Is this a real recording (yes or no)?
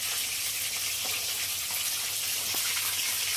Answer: yes